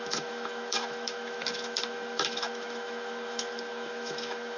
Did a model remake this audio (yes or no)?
yes